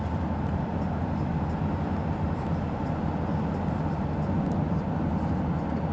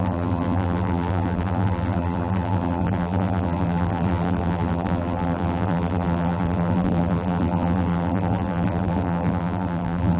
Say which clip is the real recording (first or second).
first